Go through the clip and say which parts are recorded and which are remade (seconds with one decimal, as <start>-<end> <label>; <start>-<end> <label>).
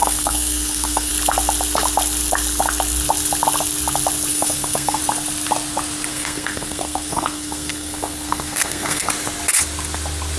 0.0-1.1 remade; 1.1-4.3 recorded; 4.3-5.0 remade; 5.0-6.1 recorded; 6.1-9.1 remade; 9.1-10.4 recorded